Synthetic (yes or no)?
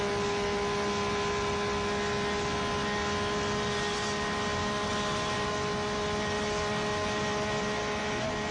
no